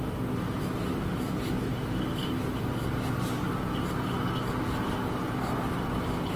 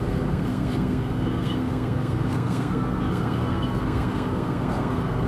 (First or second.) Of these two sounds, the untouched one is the first